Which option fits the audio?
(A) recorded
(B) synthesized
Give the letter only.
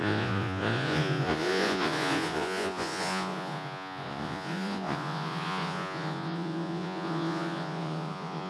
B